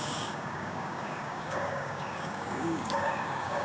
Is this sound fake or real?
fake